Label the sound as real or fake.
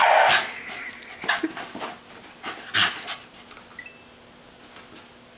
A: real